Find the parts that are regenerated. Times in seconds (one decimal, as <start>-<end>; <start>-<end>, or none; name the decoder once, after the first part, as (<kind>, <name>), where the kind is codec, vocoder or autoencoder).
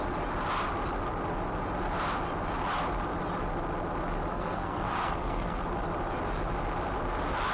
4.3-5.6 (codec, SNAC)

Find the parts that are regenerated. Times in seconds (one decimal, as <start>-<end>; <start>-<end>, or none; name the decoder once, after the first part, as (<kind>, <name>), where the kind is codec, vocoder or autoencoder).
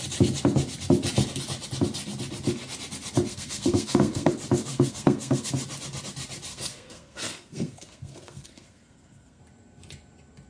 3.3-4.3 (codec, SNAC); 4.7-5.5; 6.5-9.4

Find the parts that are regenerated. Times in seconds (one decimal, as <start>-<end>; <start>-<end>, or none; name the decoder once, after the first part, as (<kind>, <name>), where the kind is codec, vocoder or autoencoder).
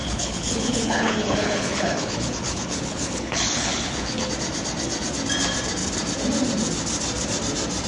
0.0-4.3 (codec, HILCodec)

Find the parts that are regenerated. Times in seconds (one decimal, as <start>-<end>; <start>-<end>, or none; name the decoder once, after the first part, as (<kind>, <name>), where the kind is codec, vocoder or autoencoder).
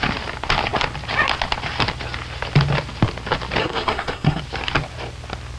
3.6-4.4 (codec, SNAC)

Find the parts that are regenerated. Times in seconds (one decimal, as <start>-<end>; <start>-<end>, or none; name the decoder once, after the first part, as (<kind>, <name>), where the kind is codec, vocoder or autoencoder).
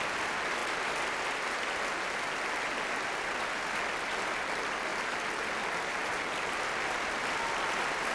none